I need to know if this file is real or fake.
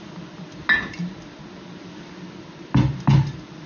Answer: real